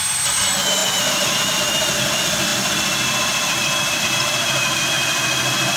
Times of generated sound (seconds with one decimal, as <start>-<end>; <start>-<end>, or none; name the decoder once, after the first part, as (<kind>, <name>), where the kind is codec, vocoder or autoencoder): none